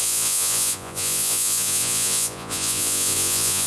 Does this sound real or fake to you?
fake